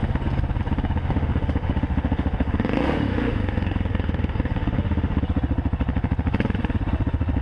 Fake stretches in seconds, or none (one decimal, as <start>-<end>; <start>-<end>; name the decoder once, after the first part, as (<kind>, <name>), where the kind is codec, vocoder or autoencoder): 1.0-5.2 (autoencoder, DAC-VAE)